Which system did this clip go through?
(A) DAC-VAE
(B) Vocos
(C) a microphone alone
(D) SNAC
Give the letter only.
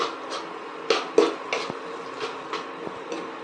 C